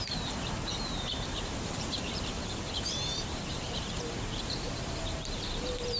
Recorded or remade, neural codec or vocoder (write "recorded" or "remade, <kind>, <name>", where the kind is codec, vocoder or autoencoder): remade, vocoder, BigVGAN v2